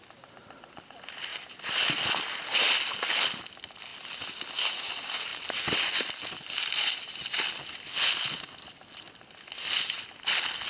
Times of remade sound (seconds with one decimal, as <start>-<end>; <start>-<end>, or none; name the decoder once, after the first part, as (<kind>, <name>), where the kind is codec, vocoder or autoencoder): none